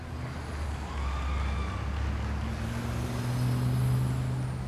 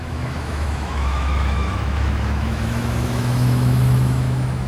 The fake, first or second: second